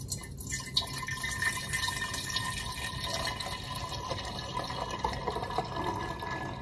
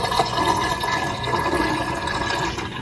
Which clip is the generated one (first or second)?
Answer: second